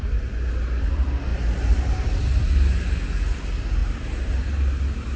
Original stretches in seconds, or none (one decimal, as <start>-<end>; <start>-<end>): 0.0-1.3; 2.4-3.8; 4.8-5.2